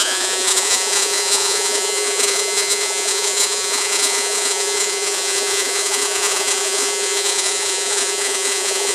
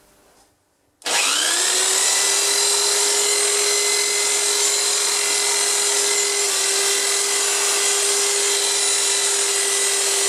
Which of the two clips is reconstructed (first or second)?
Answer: first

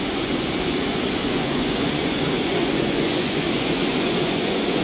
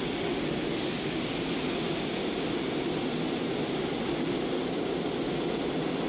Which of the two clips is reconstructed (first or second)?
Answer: first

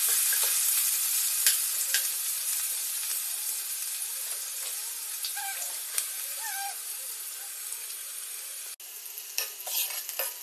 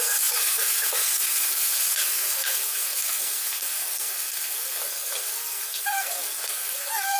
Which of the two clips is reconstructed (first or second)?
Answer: second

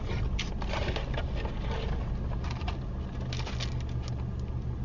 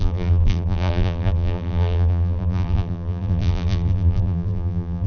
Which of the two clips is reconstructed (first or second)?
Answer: second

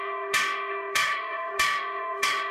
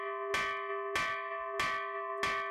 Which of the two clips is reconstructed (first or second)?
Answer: first